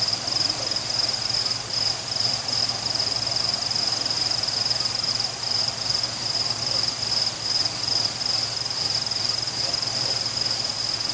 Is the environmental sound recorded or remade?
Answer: recorded